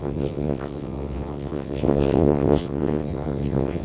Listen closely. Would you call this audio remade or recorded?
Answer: remade